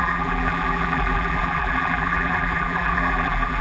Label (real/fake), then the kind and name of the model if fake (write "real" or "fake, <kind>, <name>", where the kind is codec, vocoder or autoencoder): fake, vocoder, BigVGAN v2